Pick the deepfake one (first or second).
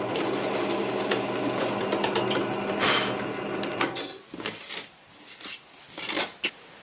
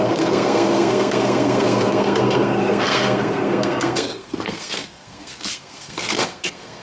second